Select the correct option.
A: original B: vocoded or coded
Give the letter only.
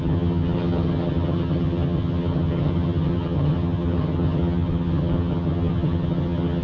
B